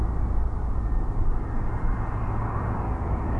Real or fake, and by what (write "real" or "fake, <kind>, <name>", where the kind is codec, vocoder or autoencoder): real